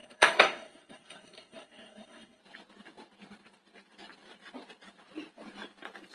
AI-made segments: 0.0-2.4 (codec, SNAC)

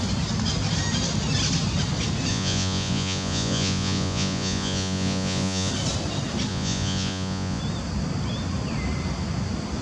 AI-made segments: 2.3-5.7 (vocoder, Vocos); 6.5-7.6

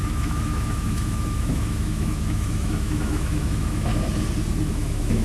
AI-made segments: 0.0-3.9 (autoencoder, DAC-VAE); 4.7-5.2

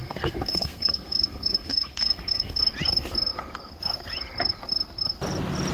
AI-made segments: 0.0-2.6 (codec, SNAC)

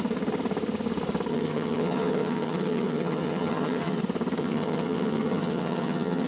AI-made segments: 1.3-4.0 (vocoder, HiFi-GAN); 4.4-6.3

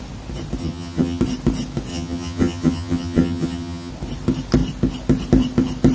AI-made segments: 0.6-1.2 (vocoder, HiFi-GAN); 1.9-3.9